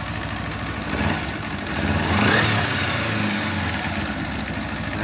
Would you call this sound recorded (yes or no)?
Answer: yes